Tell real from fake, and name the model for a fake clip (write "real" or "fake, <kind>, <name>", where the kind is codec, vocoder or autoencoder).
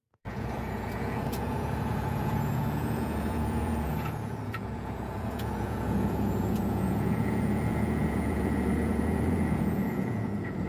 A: fake, vocoder, Vocos